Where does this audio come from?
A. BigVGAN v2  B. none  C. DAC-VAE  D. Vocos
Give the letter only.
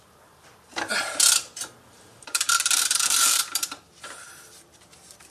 A